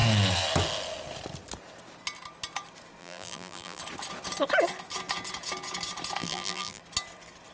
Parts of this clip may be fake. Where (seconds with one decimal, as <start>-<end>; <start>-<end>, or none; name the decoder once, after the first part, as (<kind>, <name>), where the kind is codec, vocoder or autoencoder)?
3.0-3.8 (vocoder, BigVGAN v2); 6.2-6.8